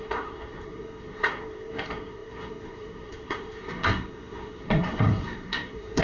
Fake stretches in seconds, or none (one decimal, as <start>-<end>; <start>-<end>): 0.0-6.0